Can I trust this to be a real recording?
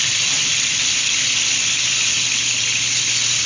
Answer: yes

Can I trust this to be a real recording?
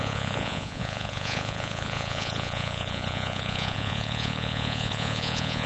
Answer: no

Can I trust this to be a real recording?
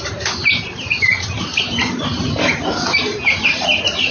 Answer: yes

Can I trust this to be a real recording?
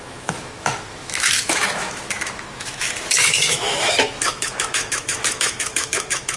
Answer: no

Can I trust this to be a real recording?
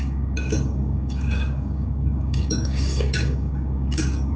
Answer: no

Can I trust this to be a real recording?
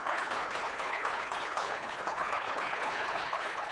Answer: no